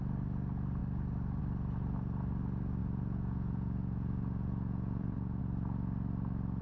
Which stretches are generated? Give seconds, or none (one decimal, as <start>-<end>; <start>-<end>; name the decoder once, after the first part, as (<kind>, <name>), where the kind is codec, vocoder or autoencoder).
2.8-5.4 (vocoder, Vocos)